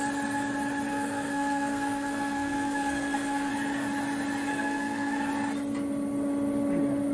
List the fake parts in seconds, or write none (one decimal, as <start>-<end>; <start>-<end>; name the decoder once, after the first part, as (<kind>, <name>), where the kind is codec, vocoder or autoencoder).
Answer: 0.9-3.5 (codec, SNAC); 4.5-5.3